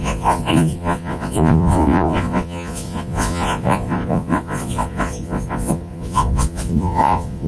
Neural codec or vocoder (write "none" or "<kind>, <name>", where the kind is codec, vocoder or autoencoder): vocoder, Vocos